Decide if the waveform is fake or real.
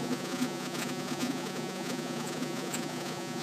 fake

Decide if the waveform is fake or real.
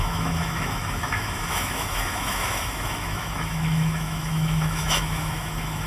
fake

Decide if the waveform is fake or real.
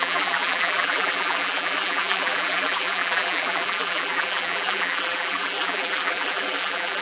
fake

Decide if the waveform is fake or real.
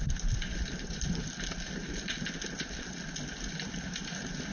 real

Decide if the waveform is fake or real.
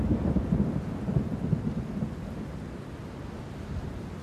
real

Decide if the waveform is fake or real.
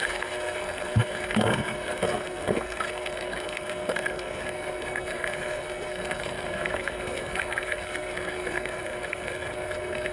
fake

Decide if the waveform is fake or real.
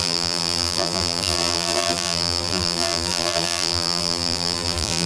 fake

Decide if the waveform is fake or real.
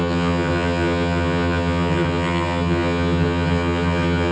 fake